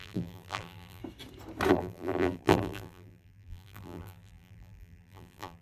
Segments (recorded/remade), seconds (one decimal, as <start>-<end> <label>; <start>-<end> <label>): 0.0-1.0 remade; 1.0-1.7 recorded; 1.7-5.6 remade